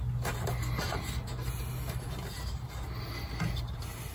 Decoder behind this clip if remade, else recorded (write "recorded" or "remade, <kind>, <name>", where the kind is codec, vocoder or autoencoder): recorded